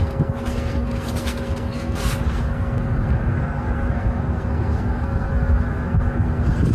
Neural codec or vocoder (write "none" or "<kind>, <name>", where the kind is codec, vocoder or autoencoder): codec, SNAC